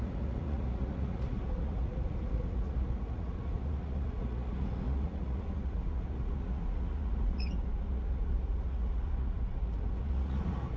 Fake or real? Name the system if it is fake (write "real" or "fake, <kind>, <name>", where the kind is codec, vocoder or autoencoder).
fake, vocoder, Vocos